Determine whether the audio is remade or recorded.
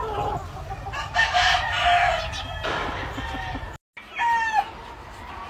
recorded